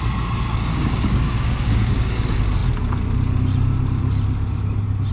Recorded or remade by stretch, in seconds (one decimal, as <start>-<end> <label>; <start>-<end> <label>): 0.0-0.7 recorded; 0.7-2.2 remade; 2.2-5.1 recorded